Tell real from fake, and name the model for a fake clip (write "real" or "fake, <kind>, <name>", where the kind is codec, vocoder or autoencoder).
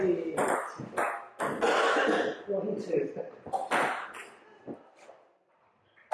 real